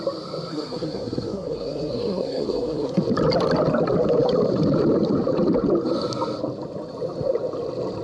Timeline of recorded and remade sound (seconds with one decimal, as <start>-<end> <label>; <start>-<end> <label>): 0.0-0.5 recorded; 0.5-3.0 remade; 3.0-8.0 recorded